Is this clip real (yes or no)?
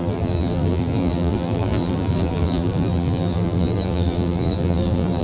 no